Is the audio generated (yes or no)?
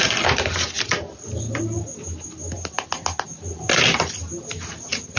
no